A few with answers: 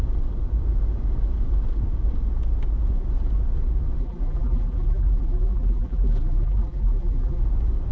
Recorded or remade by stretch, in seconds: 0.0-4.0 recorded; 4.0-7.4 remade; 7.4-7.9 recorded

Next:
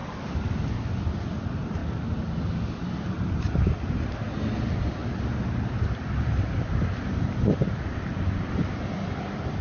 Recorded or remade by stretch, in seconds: 0.0-0.9 remade; 0.9-9.6 recorded

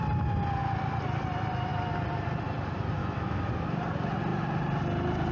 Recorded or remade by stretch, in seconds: 0.0-3.0 recorded; 3.0-3.5 remade; 3.5-5.3 recorded

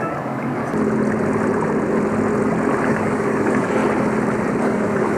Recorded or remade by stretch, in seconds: 0.0-0.6 remade; 0.6-2.9 recorded; 2.9-3.8 remade; 3.8-4.6 recorded; 4.6-5.2 remade

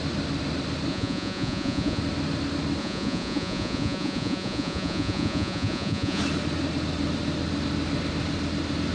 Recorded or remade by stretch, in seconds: 0.0-0.9 recorded; 0.9-2.0 remade; 2.0-2.8 recorded; 2.8-6.2 remade; 6.2-8.9 recorded

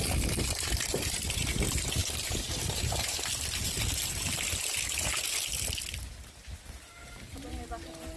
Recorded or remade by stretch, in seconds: 0.0-8.2 recorded

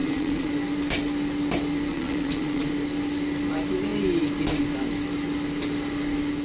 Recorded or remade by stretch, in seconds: 0.0-0.5 remade; 0.5-1.9 recorded; 1.9-2.7 remade; 2.7-6.4 recorded

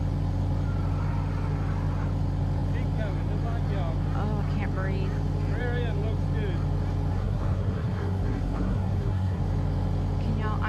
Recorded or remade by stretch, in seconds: 0.0-7.1 recorded; 7.1-9.4 remade; 9.4-10.7 recorded